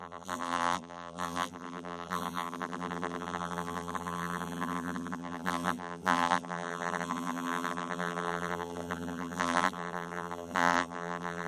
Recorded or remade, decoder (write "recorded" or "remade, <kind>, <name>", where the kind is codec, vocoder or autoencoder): remade, vocoder, BigVGAN v2